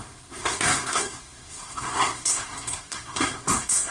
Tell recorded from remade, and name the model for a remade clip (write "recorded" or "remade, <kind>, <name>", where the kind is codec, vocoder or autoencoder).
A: remade, codec, SNAC